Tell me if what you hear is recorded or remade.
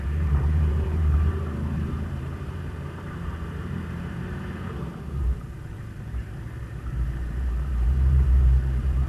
remade